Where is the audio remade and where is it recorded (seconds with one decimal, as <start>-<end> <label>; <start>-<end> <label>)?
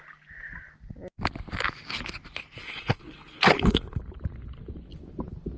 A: 0.0-2.6 recorded; 2.6-4.0 remade; 4.0-5.6 recorded